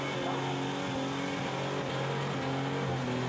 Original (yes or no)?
yes